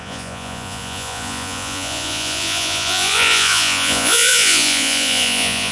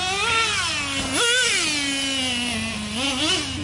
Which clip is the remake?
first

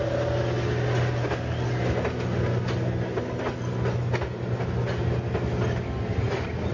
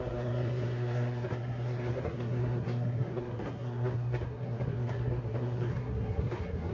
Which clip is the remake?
second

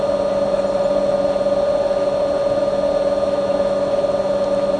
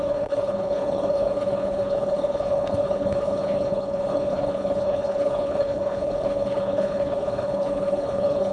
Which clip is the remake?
second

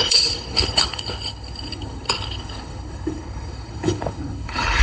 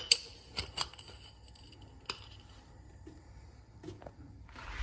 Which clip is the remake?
first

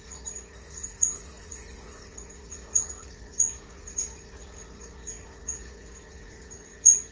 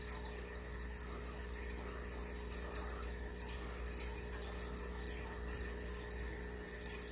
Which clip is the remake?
first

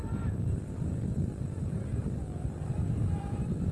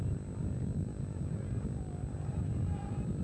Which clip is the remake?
first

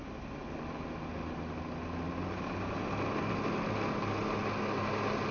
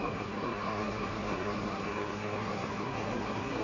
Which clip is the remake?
second